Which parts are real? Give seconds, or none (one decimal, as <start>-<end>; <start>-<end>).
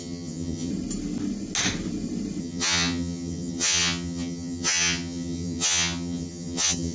0.7-2.4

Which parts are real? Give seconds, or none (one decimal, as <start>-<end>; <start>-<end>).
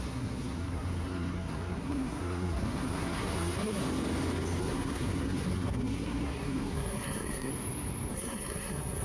3.8-4.6; 7.5-8.1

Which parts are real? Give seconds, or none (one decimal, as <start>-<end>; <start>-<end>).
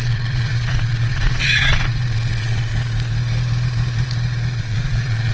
2.7-4.6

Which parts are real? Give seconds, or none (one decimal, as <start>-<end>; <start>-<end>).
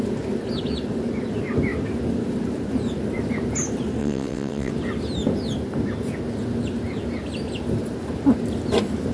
0.0-4.0; 4.7-9.1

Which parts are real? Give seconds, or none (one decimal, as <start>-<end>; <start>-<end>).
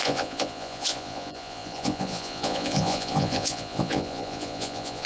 none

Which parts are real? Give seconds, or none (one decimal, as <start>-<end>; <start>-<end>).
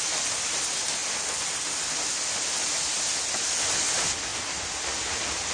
0.0-5.5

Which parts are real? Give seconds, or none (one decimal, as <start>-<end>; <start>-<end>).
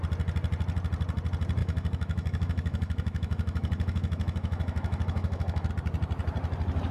0.0-1.6; 5.7-6.9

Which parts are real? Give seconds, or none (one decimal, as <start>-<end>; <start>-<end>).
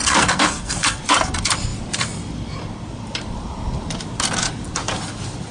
1.0-5.5